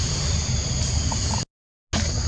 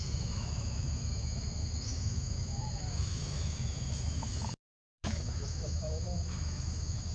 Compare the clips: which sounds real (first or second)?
first